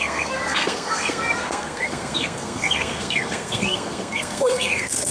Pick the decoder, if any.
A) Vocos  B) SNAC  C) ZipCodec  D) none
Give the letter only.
B